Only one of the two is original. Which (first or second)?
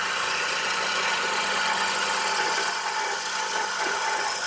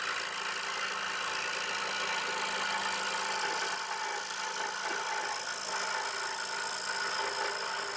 second